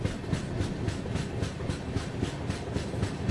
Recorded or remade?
recorded